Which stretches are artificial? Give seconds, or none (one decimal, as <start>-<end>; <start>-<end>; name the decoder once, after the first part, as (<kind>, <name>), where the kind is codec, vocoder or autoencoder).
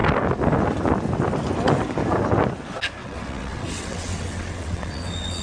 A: 3.0-5.4 (vocoder, WaveNeXt)